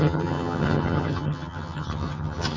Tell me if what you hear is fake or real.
fake